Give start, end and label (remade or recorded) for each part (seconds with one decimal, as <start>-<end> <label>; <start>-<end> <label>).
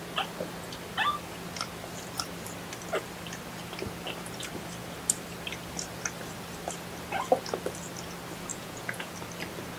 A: 0.0-8.5 recorded; 8.5-9.1 remade; 9.1-9.8 recorded